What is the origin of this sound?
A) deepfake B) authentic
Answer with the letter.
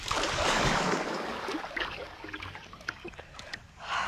A